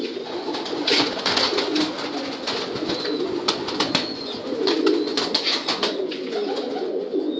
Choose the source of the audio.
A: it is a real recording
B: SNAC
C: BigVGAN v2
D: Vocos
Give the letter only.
D